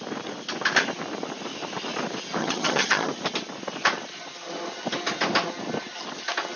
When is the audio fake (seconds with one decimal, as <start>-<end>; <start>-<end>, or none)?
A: 2.4-3.1